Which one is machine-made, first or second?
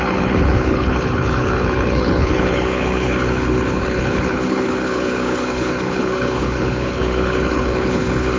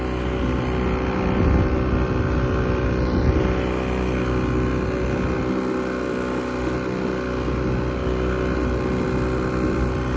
first